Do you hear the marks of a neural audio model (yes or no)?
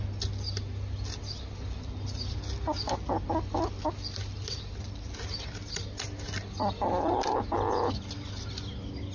no